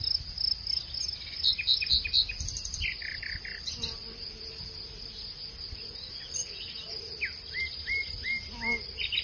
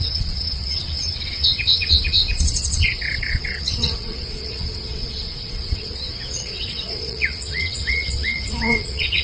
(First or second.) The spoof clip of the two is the second